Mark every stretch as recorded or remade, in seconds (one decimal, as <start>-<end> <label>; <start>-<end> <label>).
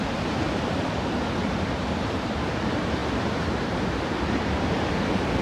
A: 0.0-0.4 remade; 0.4-2.0 recorded; 2.0-5.4 remade